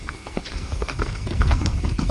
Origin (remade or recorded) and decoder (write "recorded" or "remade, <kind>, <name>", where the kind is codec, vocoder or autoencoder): remade, codec, SNAC